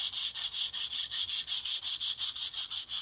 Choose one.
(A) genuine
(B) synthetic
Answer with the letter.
B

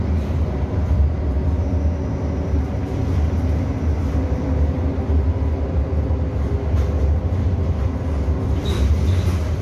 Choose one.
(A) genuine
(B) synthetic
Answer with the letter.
A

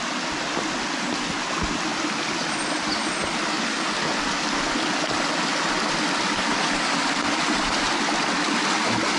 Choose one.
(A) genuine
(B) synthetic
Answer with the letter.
A